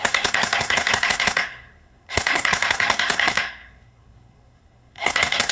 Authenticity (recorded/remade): remade